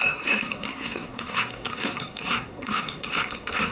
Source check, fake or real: fake